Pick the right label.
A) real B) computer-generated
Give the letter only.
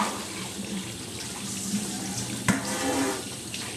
A